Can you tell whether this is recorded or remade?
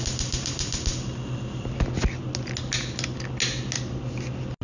recorded